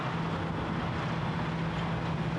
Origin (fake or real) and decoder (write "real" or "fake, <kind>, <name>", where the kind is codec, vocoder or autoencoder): real